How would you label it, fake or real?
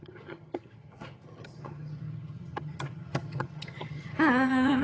fake